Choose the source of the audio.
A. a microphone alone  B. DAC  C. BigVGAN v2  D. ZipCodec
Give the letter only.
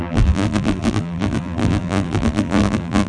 C